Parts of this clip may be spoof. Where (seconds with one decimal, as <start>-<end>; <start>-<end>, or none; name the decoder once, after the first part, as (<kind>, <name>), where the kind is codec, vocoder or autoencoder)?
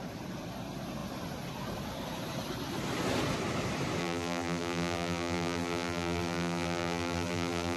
4.0-7.8 (vocoder, BigVGAN v2)